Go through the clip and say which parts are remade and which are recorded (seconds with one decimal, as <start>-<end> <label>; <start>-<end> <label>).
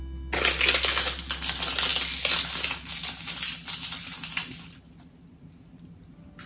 0.0-6.5 recorded